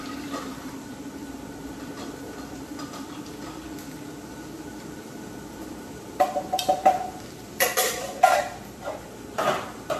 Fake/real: fake